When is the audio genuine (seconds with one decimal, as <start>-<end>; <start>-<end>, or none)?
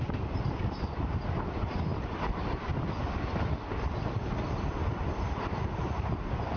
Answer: 0.0-6.6